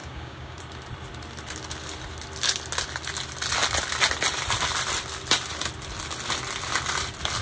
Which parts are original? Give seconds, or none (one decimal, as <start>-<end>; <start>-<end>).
0.6-7.4

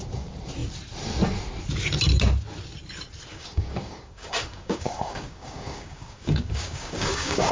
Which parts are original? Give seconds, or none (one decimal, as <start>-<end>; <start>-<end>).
0.0-3.3

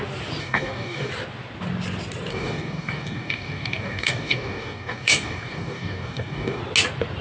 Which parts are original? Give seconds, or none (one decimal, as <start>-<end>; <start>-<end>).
0.0-0.4; 1.1-2.3; 6.6-7.2

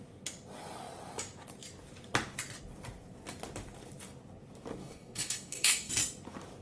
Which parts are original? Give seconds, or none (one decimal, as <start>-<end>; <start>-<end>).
0.0-4.8; 5.9-6.6

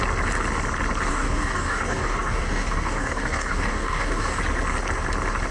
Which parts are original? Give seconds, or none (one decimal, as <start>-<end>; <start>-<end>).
0.0-1.1; 4.4-5.5